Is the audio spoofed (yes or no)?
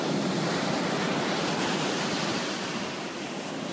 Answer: no